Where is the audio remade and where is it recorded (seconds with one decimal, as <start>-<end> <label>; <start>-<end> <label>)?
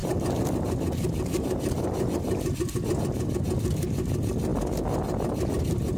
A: 0.0-6.0 recorded